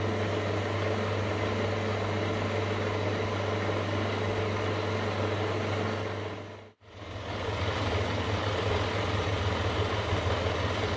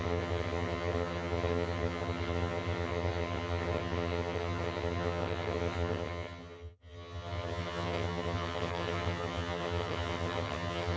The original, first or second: first